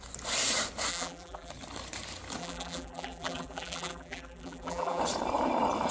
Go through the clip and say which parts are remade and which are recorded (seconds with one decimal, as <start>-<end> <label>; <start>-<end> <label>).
0.0-0.9 recorded; 0.9-1.5 remade; 1.5-2.4 recorded; 2.4-5.0 remade; 5.0-5.9 recorded